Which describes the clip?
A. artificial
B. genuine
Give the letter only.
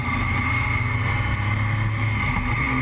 B